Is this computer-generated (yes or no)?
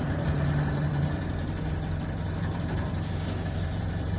yes